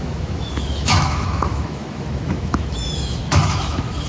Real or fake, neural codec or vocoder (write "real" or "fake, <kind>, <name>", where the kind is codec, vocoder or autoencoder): fake, autoencoder, DAC-VAE